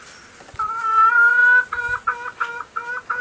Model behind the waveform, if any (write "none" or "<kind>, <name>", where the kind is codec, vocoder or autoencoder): none